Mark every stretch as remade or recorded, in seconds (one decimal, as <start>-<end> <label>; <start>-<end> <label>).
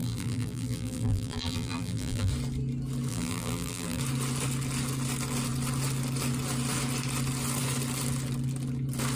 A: 0.0-2.3 remade; 2.3-3.1 recorded; 3.1-4.0 remade; 4.0-9.2 recorded